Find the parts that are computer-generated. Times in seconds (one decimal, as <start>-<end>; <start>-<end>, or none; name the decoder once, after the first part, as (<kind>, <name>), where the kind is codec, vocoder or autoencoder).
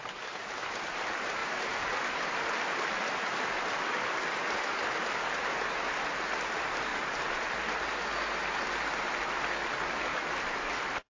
6.9-7.6 (vocoder, BigVGAN v2); 10.1-10.7